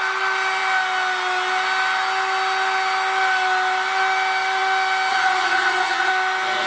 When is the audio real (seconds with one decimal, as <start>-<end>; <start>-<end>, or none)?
0.0-5.1; 6.1-6.7